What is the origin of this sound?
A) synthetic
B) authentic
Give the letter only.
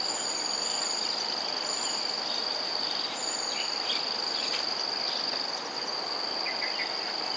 B